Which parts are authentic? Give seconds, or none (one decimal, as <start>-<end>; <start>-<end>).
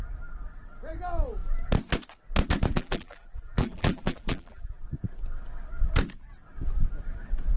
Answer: 0.0-2.7; 4.8-7.6